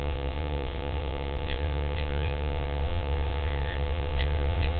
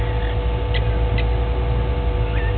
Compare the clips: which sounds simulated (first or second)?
first